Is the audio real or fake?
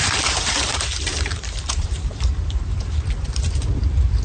fake